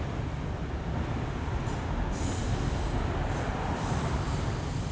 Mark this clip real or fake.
real